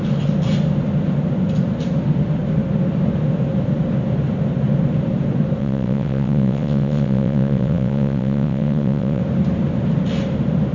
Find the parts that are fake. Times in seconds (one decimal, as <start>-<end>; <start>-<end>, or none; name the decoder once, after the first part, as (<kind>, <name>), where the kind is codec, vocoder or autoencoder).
5.6-9.2 (vocoder, WaveNeXt)